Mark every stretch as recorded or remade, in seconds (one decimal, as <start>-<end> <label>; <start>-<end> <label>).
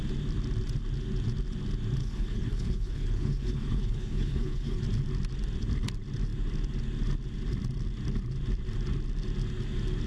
0.0-2.0 recorded; 2.0-4.8 remade; 4.8-10.1 recorded